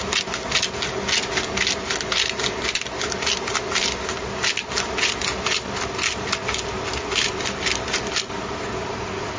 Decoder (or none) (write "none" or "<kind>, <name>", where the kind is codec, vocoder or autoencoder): none